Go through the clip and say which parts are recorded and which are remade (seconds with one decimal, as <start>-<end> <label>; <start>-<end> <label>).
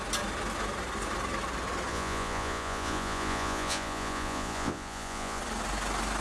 0.0-1.9 recorded; 1.9-5.4 remade; 5.4-6.2 recorded